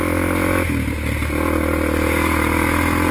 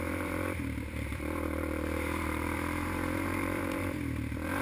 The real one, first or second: first